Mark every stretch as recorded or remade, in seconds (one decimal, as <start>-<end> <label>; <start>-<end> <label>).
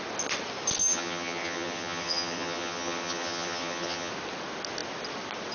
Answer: 0.0-0.8 recorded; 0.8-4.1 remade; 4.1-5.5 recorded